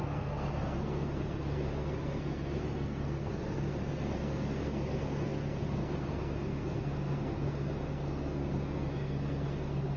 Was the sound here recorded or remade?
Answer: remade